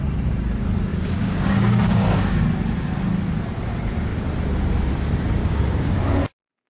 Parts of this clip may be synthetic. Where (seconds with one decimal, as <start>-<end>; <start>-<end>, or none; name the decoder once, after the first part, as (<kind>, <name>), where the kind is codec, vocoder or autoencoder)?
0.9-2.4 (codec, DAC); 5.4-6.0